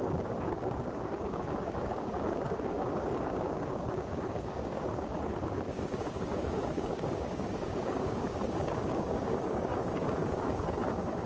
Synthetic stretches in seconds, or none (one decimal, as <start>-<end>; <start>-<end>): 0.0-11.3